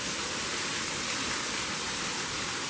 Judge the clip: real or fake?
real